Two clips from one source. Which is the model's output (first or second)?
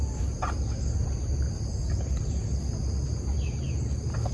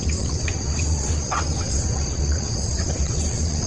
second